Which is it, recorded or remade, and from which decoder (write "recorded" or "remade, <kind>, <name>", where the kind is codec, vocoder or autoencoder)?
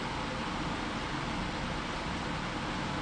recorded